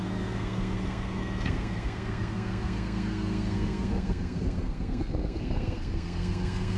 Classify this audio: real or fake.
fake